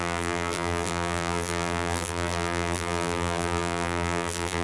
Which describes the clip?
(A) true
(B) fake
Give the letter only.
B